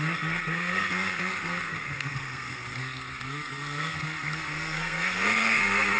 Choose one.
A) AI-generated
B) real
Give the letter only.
A